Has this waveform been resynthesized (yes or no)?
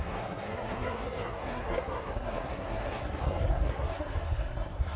yes